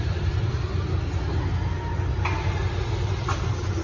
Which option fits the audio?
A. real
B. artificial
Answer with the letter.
A